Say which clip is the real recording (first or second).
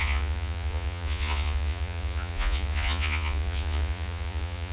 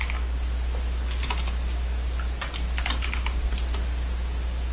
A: second